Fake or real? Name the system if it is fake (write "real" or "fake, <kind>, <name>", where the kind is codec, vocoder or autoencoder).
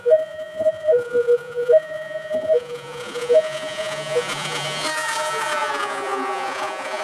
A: fake, vocoder, Vocos